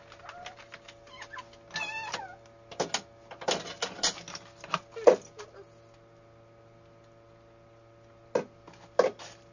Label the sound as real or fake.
real